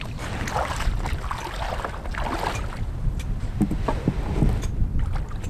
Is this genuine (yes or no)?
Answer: yes